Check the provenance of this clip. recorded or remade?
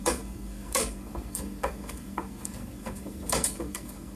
remade